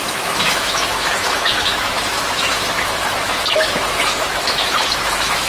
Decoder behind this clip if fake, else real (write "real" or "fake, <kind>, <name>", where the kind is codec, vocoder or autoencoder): fake, autoencoder, DAC-VAE